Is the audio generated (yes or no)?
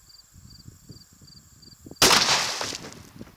no